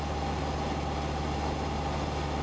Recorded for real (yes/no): yes